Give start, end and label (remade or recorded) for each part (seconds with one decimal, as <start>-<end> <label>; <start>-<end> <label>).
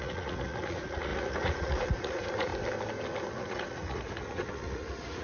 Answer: 0.0-2.5 remade; 2.5-3.3 recorded; 3.3-5.2 remade